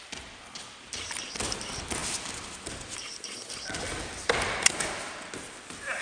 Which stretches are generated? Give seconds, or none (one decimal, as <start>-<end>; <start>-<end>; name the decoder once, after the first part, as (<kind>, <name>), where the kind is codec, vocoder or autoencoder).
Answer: none